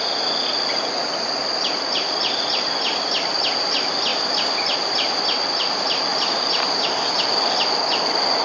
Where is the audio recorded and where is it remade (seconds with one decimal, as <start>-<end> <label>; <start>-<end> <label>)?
0.0-6.1 recorded; 6.1-7.9 remade; 7.9-8.4 recorded